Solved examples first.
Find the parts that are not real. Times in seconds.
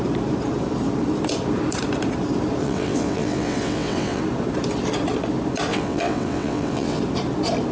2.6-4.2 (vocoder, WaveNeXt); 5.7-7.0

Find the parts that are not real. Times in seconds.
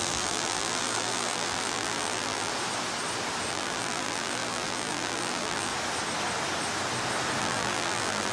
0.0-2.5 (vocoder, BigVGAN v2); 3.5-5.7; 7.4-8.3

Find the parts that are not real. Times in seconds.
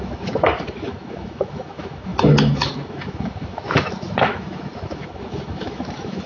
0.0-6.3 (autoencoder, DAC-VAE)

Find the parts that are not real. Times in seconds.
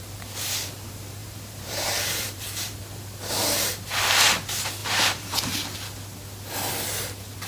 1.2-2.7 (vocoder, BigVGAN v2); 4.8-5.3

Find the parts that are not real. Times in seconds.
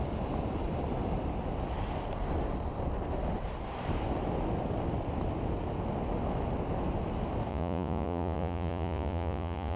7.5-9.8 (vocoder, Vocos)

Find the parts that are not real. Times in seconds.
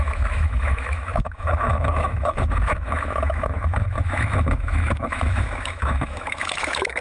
0.0-7.0 (autoencoder, DAC-VAE)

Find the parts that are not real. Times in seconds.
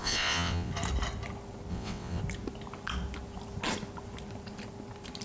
0.0-0.7 (vocoder, WaveNeXt); 1.7-2.2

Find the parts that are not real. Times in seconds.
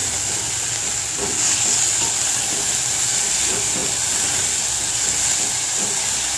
none